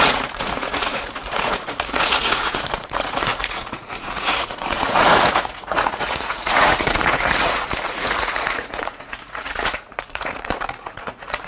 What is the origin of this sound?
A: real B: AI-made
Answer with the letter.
B